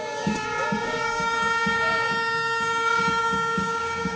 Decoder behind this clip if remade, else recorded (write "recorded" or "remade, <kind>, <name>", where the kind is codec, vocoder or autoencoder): remade, codec, DAC